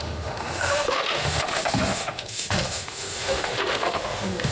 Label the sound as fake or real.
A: fake